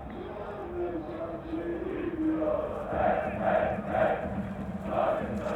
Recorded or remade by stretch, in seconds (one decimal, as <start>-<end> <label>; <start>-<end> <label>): 0.0-5.6 recorded

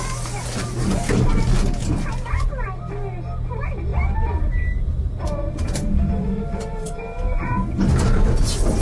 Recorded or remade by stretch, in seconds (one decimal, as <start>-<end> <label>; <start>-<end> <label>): 0.0-3.9 recorded; 3.9-7.4 remade; 7.4-8.8 recorded